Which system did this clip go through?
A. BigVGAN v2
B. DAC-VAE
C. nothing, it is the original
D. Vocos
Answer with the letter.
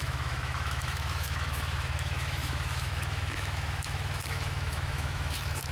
B